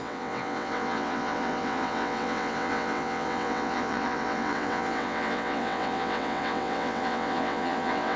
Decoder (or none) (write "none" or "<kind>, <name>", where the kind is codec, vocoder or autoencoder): vocoder, WaveNeXt